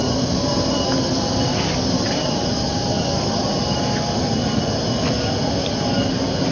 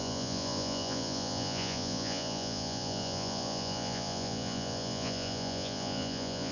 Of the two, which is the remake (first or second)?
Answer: second